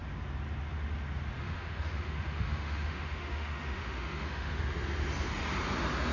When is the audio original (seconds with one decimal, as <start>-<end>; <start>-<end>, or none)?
0.0-1.4; 4.6-6.1